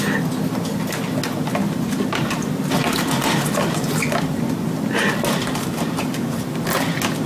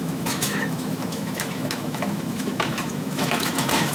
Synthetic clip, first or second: second